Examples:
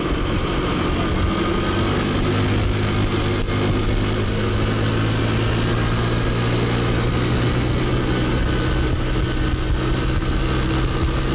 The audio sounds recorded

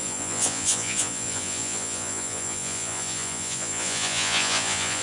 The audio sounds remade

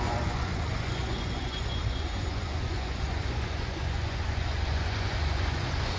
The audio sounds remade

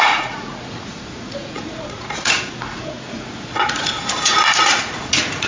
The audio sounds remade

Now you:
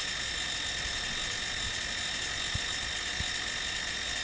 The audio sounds recorded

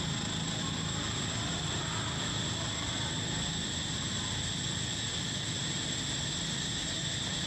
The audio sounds recorded